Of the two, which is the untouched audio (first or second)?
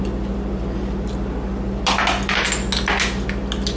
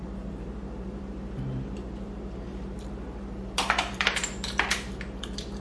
first